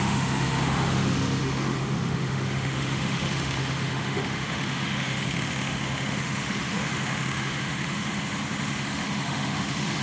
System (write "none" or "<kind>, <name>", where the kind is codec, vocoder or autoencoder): autoencoder, DAC-VAE